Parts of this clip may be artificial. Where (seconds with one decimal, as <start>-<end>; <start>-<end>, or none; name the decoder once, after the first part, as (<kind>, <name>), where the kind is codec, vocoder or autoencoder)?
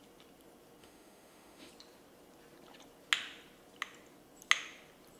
0.8-1.7 (autoencoder, DAC-VAE)